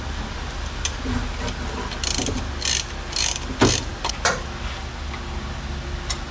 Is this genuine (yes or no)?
yes